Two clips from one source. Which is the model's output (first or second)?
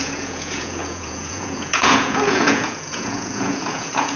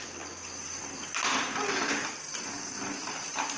first